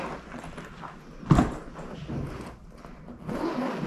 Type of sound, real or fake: real